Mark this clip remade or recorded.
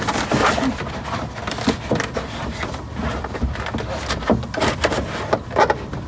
recorded